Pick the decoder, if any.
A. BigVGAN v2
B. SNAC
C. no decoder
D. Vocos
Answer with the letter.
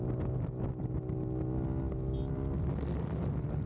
C